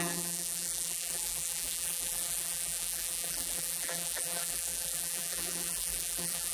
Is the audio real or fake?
fake